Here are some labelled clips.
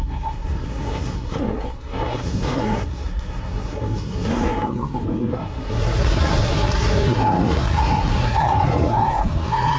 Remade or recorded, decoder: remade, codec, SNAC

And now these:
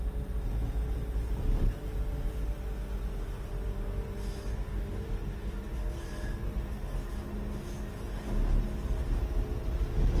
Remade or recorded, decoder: recorded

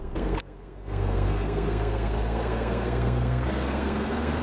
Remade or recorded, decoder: remade, codec, SNAC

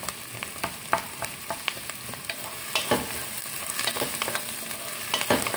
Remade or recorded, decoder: recorded